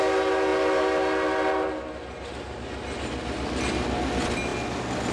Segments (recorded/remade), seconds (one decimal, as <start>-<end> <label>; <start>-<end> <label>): 0.0-5.1 recorded